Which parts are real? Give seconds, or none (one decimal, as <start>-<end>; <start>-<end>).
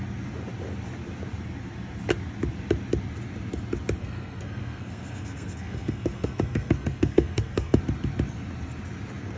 0.0-4.0; 7.8-9.4